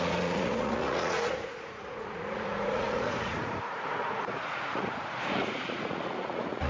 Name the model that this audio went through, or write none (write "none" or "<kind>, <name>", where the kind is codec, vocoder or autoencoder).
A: vocoder, Vocos